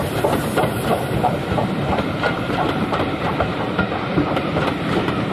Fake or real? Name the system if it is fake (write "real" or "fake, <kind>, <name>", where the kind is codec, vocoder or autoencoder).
fake, vocoder, BigVGAN v2